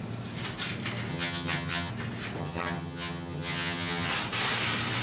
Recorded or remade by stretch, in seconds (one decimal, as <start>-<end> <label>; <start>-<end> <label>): 0.0-1.1 recorded; 1.1-1.9 remade; 1.9-2.4 recorded; 2.4-4.1 remade; 4.1-5.0 recorded